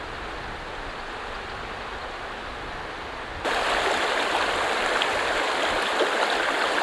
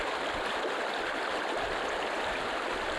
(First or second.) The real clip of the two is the first